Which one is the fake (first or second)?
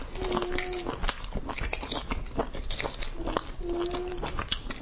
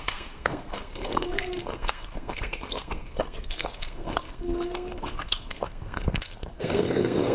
second